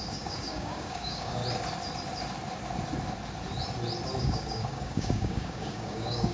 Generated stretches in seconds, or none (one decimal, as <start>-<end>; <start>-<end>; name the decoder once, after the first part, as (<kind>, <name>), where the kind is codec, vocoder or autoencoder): 0.0-1.4 (codec, DAC); 4.2-6.3